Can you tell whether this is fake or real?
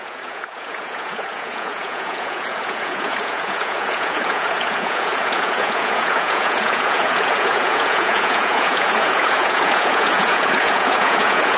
fake